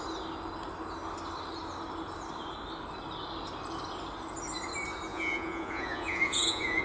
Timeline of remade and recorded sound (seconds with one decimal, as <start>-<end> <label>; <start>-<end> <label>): 0.0-5.1 recorded; 5.1-6.8 remade